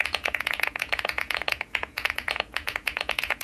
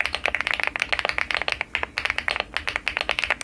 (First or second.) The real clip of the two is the second